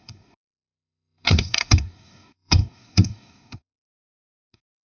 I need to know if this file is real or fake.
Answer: fake